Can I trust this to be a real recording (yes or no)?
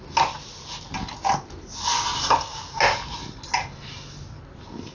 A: yes